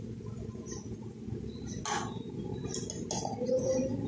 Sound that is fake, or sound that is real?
real